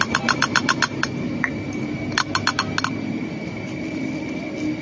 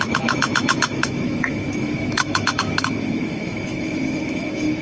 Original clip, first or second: first